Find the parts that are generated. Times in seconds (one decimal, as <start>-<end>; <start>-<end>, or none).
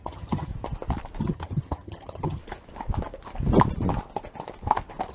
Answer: 0.0-0.5; 1.2-2.4